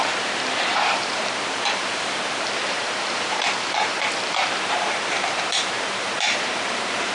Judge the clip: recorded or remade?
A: remade